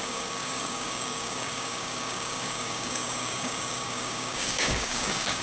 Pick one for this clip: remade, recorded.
remade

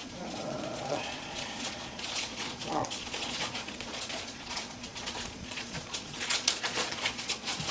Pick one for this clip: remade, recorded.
remade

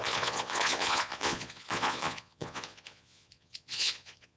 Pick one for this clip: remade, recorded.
remade